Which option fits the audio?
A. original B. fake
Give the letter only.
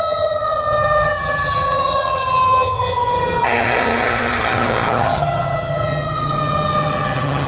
B